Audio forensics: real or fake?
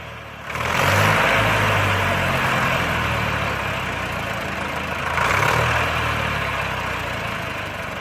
real